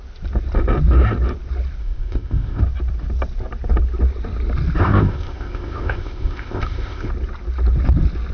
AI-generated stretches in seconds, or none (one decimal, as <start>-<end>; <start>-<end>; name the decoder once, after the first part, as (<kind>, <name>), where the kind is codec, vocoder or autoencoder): 1.8-2.6 (codec, ZipCodec); 4.8-7.1